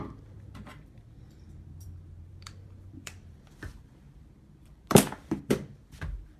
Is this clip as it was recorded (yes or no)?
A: no